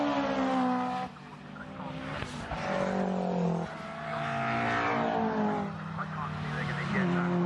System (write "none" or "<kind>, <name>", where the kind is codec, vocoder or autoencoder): none